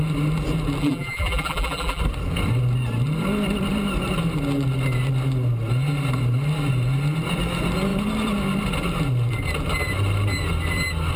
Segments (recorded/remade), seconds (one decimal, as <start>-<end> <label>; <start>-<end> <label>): 0.0-0.8 recorded; 0.8-2.0 remade; 2.0-11.2 recorded